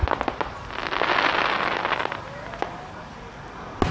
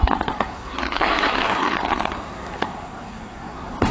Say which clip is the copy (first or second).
second